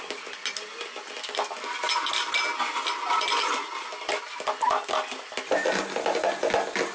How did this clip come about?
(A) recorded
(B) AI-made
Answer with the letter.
A